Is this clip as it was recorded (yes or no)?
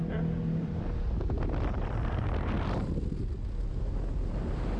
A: yes